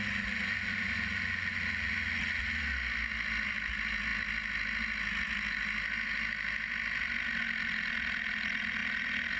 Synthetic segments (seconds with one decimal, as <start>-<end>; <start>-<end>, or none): none